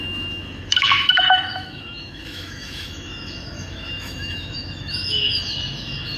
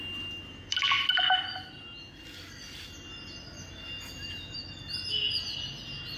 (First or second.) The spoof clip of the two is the first